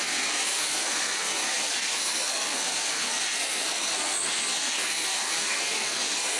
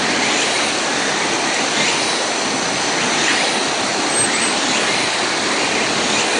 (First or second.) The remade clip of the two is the first